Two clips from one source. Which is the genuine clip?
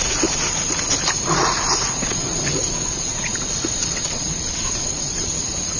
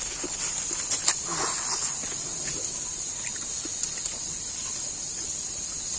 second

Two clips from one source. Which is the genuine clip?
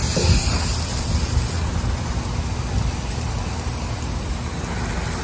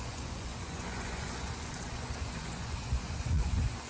first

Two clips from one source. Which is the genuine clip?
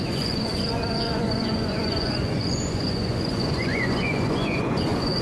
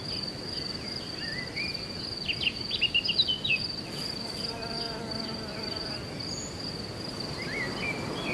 second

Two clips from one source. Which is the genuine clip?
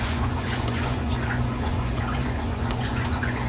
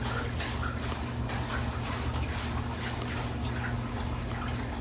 second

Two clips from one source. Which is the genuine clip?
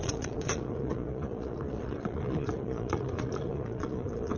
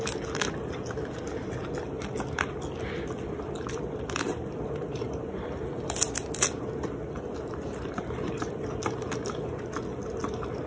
second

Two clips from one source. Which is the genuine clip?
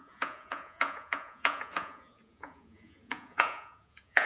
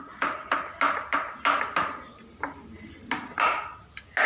second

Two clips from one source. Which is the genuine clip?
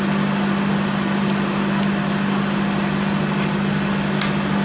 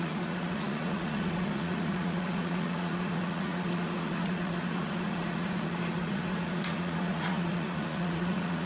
first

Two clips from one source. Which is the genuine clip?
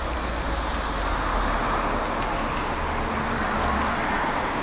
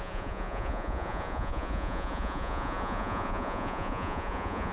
first